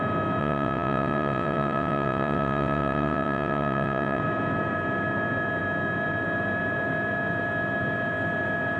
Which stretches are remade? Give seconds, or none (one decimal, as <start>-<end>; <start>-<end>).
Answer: 0.4-4.2